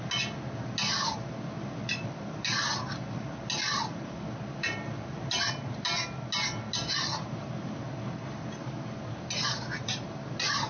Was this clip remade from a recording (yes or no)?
no